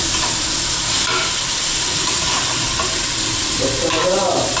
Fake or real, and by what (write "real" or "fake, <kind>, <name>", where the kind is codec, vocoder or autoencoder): fake, vocoder, BigVGAN v2